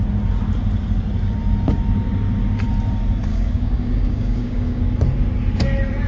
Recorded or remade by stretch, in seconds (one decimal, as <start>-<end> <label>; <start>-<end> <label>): 0.0-3.3 recorded; 3.3-4.8 remade; 4.8-6.1 recorded